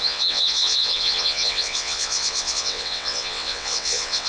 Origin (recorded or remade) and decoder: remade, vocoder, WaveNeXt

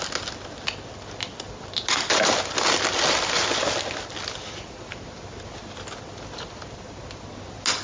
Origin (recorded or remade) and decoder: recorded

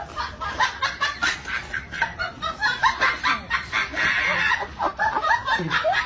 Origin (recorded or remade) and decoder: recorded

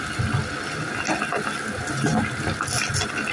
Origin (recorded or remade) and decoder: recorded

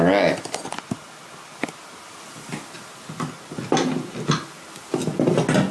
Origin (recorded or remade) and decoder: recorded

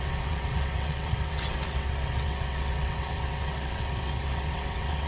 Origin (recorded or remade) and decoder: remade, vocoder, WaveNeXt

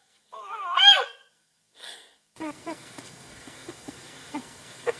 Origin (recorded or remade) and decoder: remade, codec, SNAC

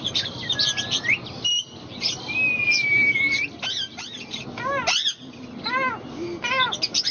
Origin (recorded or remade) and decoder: recorded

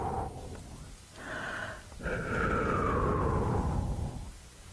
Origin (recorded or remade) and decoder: recorded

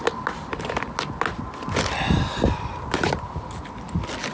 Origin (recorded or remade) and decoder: recorded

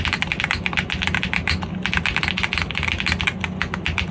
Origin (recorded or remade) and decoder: recorded